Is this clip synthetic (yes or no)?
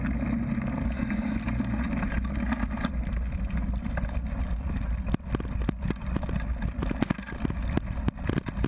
no